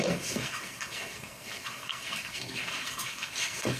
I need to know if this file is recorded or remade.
remade